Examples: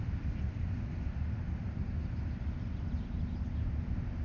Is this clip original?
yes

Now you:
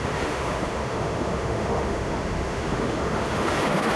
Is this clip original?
no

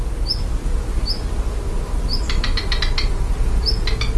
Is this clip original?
yes